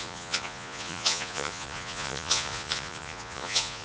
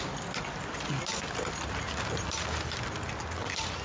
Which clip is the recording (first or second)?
second